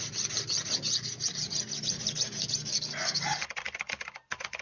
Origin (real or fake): real